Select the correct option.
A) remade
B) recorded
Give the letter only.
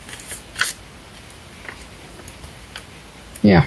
B